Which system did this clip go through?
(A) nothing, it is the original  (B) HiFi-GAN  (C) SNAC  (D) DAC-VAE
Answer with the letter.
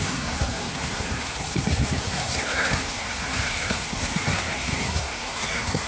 C